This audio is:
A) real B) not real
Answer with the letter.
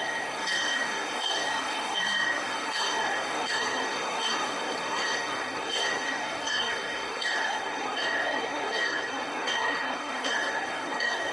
B